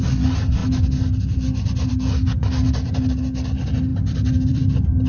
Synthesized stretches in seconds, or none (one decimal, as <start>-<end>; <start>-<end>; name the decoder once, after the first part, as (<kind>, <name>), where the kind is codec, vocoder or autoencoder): 3.9-4.6 (vocoder, BigVGAN v2)